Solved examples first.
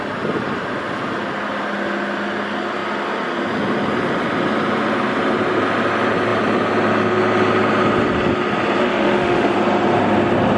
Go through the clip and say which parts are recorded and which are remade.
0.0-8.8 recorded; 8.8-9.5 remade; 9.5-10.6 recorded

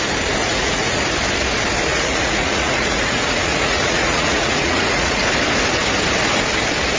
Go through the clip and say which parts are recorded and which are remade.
0.0-0.4 recorded; 0.4-1.0 remade; 1.0-1.9 recorded; 1.9-5.2 remade; 5.2-7.0 recorded

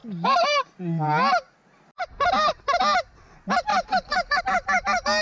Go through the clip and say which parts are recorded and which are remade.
0.0-5.2 recorded

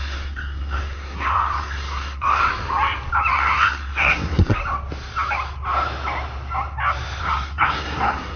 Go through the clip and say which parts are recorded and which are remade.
0.0-2.4 remade; 2.4-3.3 recorded; 3.3-4.6 remade; 4.6-7.2 recorded; 7.2-8.4 remade

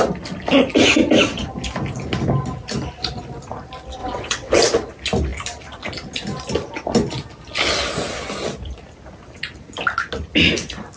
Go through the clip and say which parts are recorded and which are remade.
0.0-4.0 recorded; 4.0-4.6 remade; 4.6-11.0 recorded

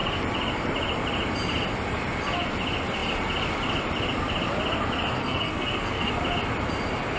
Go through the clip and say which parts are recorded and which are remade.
0.0-5.2 recorded; 5.2-6.1 remade; 6.1-7.2 recorded